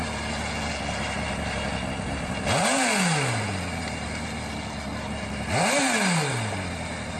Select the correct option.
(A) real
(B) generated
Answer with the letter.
A